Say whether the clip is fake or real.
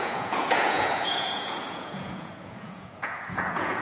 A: fake